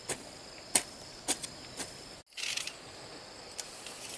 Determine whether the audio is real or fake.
real